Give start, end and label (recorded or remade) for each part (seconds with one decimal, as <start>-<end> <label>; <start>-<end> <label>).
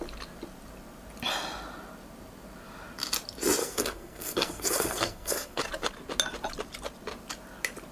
0.0-3.6 recorded; 3.6-5.6 remade; 5.6-7.9 recorded